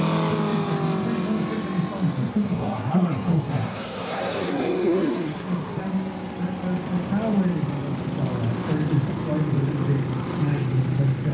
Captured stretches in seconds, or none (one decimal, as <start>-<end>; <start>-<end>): 0.0-2.3; 5.8-11.3